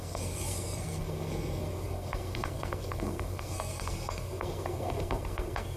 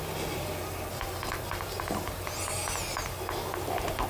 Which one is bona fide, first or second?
second